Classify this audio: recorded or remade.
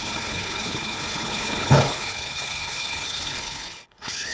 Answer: remade